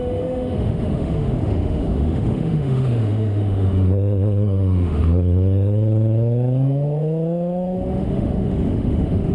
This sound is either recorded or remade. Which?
remade